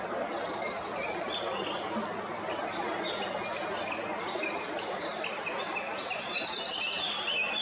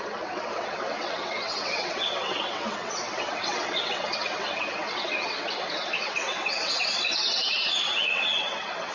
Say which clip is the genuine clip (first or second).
first